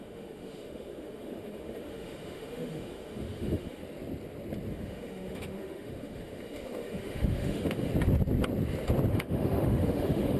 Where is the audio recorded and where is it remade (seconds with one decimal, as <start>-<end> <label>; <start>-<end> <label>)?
0.0-3.8 remade; 3.8-4.7 recorded; 4.7-7.9 remade; 7.9-9.1 recorded; 9.1-10.4 remade